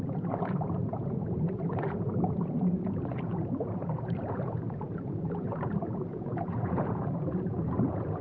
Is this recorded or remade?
remade